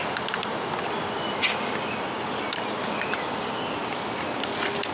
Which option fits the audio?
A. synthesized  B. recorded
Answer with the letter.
B